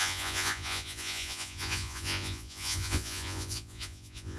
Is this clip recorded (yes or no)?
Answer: no